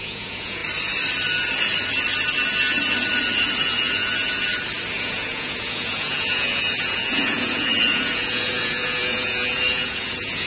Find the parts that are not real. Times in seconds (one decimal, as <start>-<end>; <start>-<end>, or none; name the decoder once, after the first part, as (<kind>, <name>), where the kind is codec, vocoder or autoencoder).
0.0-0.6 (vocoder, Vocos); 3.6-4.5; 5.0-10.5